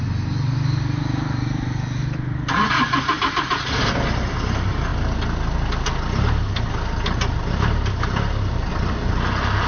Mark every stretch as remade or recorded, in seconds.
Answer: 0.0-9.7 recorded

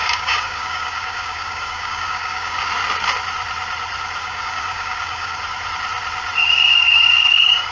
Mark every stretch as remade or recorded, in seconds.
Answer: 0.0-2.6 remade; 2.6-4.2 recorded; 4.2-5.4 remade; 5.4-6.4 recorded; 6.4-7.7 remade

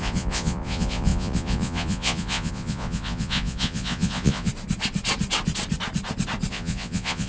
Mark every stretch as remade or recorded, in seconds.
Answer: 0.0-4.5 remade; 4.5-6.5 recorded; 6.5-7.3 remade

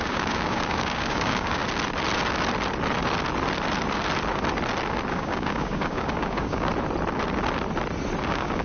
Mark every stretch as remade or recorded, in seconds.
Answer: 0.0-1.6 remade; 1.6-5.1 recorded; 5.1-6.7 remade; 6.7-8.2 recorded; 8.2-8.6 remade

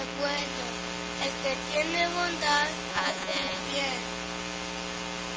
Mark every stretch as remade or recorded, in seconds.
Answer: 0.0-2.9 recorded; 2.9-3.6 remade; 3.6-5.4 recorded

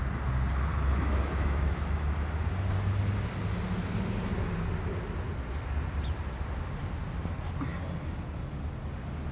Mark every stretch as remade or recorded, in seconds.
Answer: 0.0-0.7 recorded; 0.7-2.1 remade; 2.1-9.3 recorded

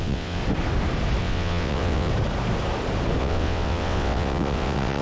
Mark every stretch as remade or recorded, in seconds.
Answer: 0.0-0.4 remade; 0.4-1.2 recorded; 1.2-2.1 remade; 2.1-3.2 recorded; 3.2-5.0 remade